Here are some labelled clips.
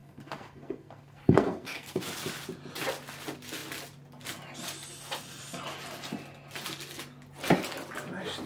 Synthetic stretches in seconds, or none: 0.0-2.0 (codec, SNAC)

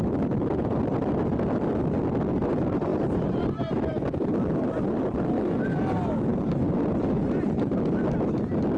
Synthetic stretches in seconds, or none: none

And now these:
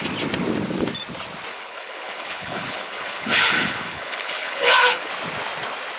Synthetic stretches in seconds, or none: 1.5-5.1 (codec, HILCodec)